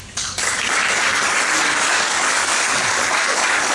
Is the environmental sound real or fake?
fake